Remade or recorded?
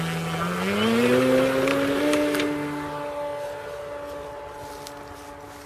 recorded